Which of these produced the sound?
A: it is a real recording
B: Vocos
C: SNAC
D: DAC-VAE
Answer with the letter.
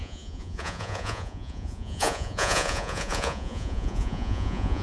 B